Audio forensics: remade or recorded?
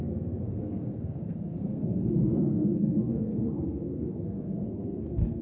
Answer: remade